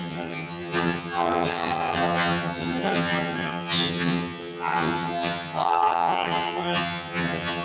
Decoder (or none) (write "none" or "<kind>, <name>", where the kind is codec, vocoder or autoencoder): vocoder, HiFi-GAN